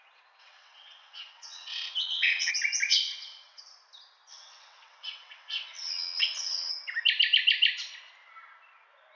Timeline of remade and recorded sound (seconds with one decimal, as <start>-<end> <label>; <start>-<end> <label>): 0.0-0.4 recorded; 0.4-2.5 remade; 2.5-2.9 recorded; 2.9-3.6 remade; 3.6-4.3 recorded; 4.3-6.7 remade; 6.7-9.2 recorded